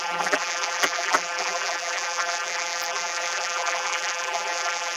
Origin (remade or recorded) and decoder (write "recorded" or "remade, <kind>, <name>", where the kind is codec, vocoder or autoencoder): remade, vocoder, BigVGAN v2